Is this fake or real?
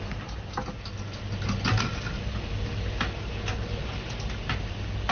real